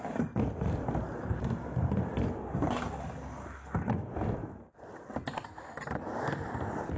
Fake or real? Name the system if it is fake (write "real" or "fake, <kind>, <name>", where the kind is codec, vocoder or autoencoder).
real